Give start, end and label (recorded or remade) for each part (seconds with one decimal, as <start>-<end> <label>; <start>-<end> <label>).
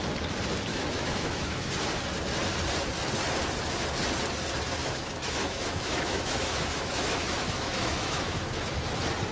0.0-0.7 recorded; 0.7-1.7 remade; 1.7-4.8 recorded; 4.8-8.4 remade; 8.4-9.3 recorded